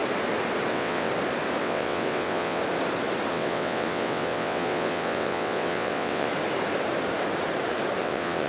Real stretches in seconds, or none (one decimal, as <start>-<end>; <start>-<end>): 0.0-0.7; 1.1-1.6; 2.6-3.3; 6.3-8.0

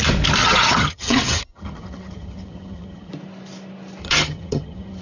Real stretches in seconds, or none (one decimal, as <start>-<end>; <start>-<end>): 0.0-0.4; 3.1-4.0

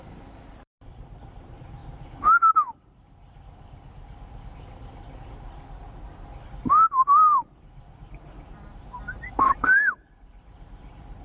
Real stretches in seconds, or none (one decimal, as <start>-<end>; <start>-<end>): 1.8-6.4

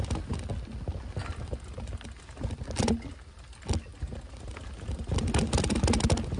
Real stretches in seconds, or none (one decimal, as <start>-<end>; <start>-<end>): 0.0-6.4

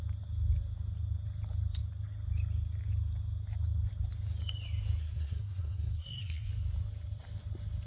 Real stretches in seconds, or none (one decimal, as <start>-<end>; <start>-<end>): 0.0-5.0; 6.5-7.9

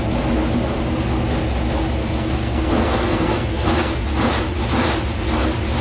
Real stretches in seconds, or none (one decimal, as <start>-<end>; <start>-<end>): 0.0-2.0; 4.0-5.8

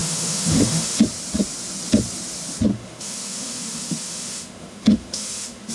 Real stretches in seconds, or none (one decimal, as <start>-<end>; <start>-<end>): 1.0-2.7

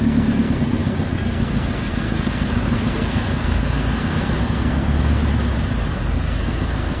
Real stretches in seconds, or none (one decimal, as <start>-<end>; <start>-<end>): 5.2-5.9